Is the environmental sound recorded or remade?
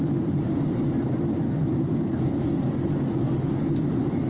remade